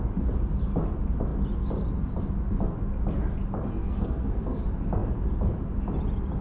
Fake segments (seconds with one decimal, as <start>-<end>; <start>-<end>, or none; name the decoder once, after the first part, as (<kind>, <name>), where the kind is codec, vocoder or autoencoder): 3.8-4.6 (codec, SNAC)